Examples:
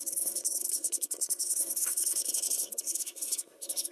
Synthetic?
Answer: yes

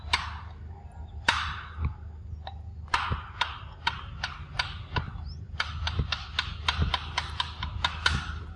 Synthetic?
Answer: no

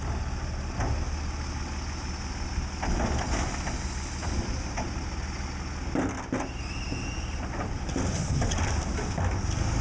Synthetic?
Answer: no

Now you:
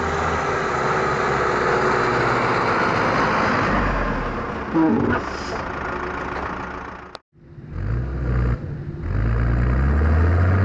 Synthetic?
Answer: no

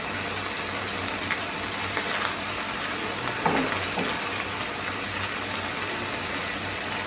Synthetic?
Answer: no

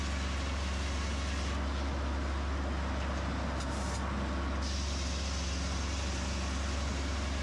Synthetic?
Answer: no